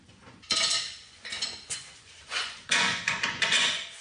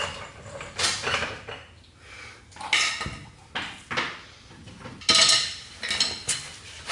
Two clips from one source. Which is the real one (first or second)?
second